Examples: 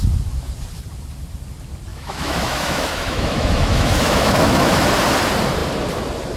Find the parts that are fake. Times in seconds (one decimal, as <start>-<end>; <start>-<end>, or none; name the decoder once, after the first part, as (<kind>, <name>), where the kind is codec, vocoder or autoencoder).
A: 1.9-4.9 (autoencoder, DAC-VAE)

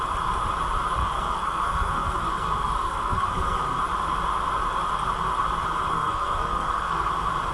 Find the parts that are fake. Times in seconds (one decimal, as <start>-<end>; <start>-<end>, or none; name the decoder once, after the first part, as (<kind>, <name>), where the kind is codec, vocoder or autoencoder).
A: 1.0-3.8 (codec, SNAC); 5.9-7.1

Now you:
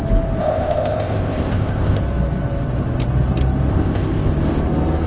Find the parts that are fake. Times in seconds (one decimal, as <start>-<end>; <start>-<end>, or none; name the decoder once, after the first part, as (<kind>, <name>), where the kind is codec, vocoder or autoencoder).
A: 0.4-2.0 (codec, ZipCodec); 3.7-4.3

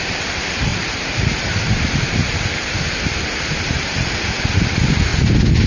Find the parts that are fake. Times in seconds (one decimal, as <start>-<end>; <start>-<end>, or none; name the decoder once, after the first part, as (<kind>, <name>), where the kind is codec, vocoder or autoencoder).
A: 0.7-4.1 (vocoder, BigVGAN v2)